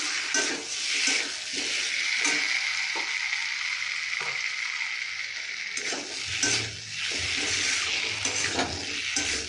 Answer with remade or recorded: recorded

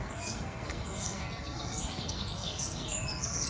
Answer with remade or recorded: remade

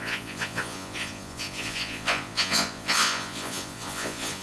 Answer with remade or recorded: remade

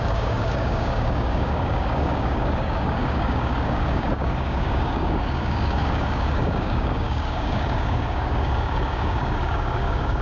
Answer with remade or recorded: remade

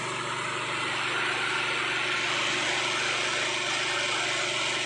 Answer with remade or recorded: recorded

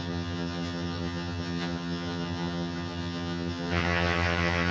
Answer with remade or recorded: remade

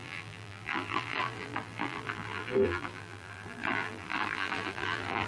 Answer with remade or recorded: remade